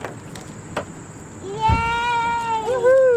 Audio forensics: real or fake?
real